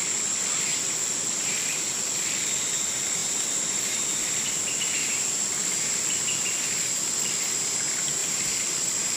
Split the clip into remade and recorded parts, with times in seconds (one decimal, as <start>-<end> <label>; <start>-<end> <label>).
0.0-0.7 recorded; 0.7-2.5 remade; 2.5-3.2 recorded; 3.2-4.2 remade; 4.2-8.2 recorded; 8.2-9.2 remade